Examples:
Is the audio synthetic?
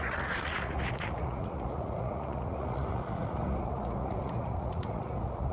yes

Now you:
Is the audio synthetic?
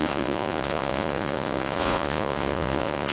yes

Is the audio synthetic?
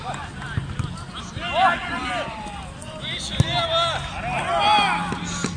no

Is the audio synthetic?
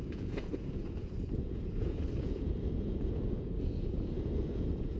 yes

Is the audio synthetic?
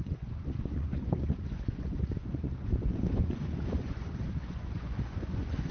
yes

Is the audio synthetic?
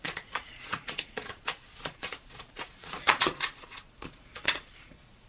yes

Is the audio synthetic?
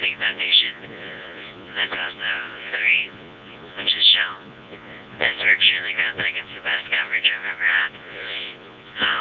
yes